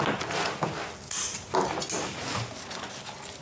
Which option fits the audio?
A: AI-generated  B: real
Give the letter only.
B